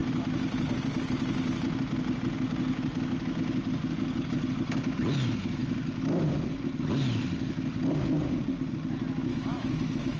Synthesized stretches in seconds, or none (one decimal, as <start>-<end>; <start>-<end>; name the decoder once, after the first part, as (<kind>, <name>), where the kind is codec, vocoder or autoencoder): 9.3-10.2 (autoencoder, DAC-VAE)